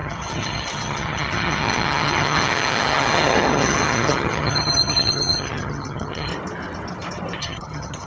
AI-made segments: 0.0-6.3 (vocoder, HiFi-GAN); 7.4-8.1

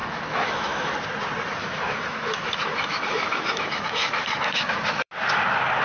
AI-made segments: 0.0-0.9 (autoencoder, DAC-VAE); 1.6-5.1

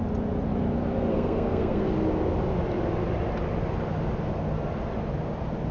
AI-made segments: 1.1-1.9 (codec, SNAC)

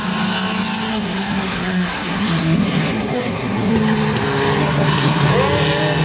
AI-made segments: 0.9-3.7 (codec, SNAC); 4.6-5.3